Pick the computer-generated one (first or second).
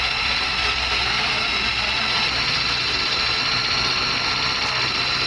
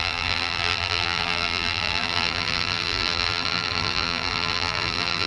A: second